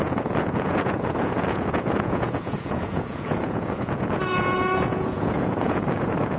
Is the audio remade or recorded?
remade